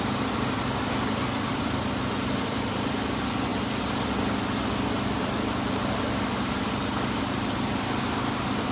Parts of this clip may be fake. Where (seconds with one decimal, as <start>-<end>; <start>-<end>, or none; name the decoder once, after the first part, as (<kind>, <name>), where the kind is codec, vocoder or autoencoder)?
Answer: none